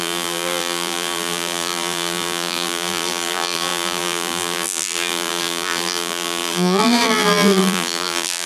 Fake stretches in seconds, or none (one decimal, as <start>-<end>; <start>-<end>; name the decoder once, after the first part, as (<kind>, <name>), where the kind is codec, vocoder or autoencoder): 0.0-8.5 (vocoder, BigVGAN v2)